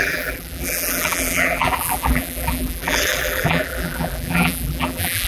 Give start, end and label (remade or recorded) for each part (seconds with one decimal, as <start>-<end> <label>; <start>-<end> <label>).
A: 0.0-5.3 remade